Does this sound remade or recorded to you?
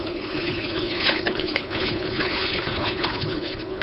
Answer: remade